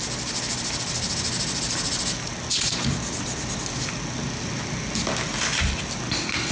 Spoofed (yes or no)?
no